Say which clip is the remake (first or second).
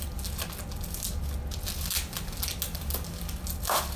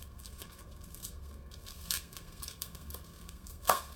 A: second